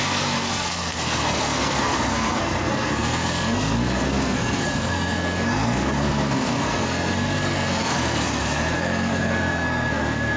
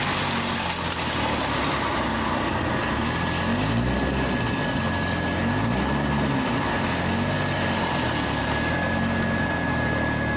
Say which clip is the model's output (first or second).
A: first